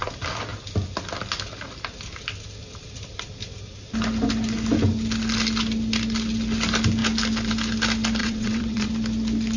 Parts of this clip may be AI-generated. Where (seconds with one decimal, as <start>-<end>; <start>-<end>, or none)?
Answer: 8.2-8.9